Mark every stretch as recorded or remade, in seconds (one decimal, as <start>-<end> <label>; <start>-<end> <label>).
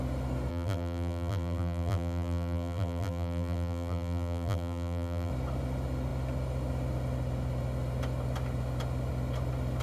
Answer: 0.0-0.5 recorded; 0.5-5.3 remade; 5.3-9.8 recorded